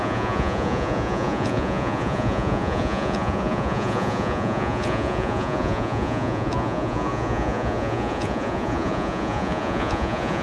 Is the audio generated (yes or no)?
yes